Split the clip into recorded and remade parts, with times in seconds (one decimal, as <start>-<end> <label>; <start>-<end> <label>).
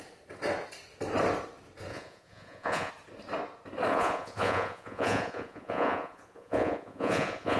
0.0-1.9 recorded; 1.9-2.9 remade; 2.9-3.9 recorded; 3.9-7.6 remade